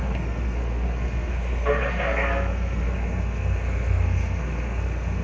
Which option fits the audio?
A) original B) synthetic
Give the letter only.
B